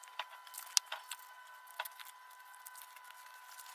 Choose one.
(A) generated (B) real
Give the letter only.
B